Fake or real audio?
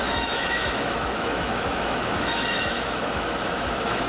fake